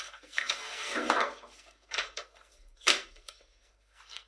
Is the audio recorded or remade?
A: remade